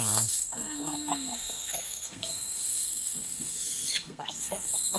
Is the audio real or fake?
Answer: fake